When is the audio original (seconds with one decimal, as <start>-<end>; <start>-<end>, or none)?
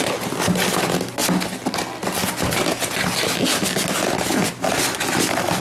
0.0-5.6